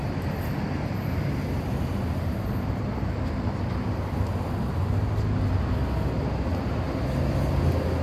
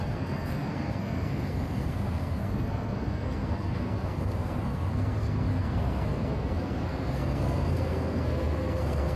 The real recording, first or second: first